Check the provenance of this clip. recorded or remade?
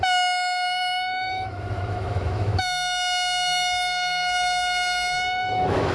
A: remade